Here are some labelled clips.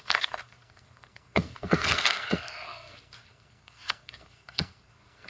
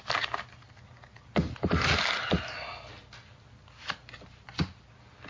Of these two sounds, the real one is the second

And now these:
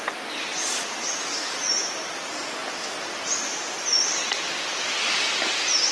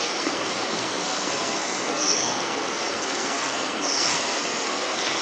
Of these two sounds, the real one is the first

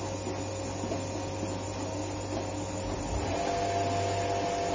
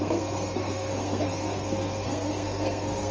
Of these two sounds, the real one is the first